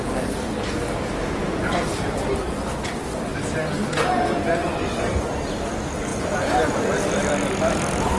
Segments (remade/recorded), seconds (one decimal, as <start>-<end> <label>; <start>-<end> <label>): 0.0-6.1 recorded; 6.1-7.3 remade; 7.3-8.2 recorded

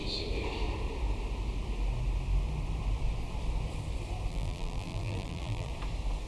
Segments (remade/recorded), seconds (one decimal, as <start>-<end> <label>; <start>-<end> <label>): 0.0-4.3 recorded; 4.3-5.7 remade; 5.7-6.3 recorded

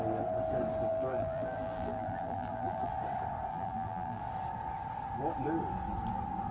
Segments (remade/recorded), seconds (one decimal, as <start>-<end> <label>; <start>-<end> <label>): 0.0-0.9 recorded; 0.9-2.9 remade; 2.9-3.5 recorded; 3.5-4.2 remade; 4.2-6.5 recorded

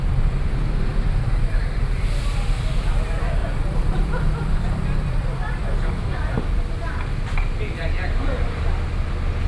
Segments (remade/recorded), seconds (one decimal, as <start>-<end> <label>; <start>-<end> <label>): 0.0-0.9 recorded; 0.9-1.8 remade; 1.8-3.4 recorded; 3.4-6.4 remade; 6.4-9.5 recorded

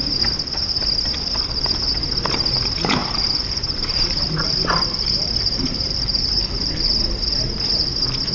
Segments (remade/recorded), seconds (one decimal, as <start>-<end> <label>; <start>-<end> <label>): 0.0-3.0 recorded; 3.0-6.7 remade; 6.7-8.3 recorded

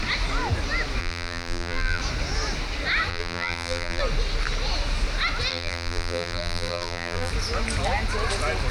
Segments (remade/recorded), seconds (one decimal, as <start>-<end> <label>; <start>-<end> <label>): 0.0-1.0 recorded; 1.0-2.0 remade; 2.0-3.1 recorded; 3.1-4.0 remade; 4.0-5.5 recorded; 5.5-7.3 remade; 7.3-8.7 recorded

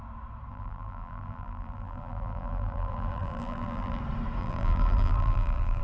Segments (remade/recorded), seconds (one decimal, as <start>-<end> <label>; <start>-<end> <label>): 0.0-0.5 recorded; 0.5-4.0 remade; 4.0-4.4 recorded; 4.4-5.8 remade

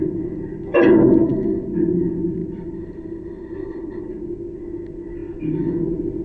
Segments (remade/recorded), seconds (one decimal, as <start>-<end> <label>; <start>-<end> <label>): 0.0-2.4 recorded; 2.4-4.0 remade; 4.0-6.2 recorded